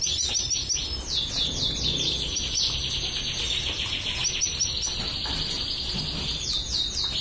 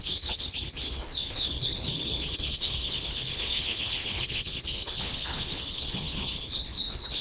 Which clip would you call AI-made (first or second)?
second